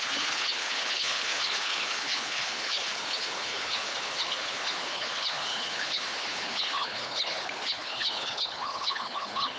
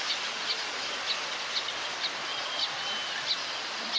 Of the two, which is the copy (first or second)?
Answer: first